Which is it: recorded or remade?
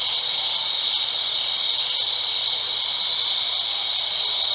recorded